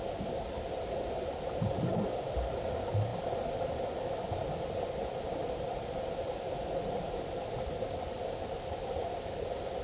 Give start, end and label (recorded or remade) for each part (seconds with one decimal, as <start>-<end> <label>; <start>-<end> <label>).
0.0-9.8 recorded